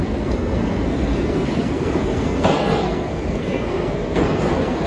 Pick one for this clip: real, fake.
fake